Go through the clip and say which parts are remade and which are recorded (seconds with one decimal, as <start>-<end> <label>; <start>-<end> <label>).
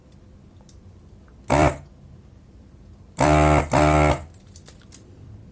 0.0-5.5 remade